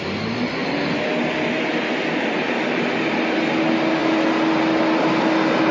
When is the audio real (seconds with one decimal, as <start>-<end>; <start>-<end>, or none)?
0.0-5.7